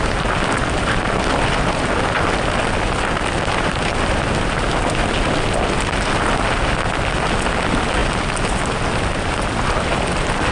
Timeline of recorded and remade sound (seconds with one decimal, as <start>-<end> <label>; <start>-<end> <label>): 0.0-10.5 recorded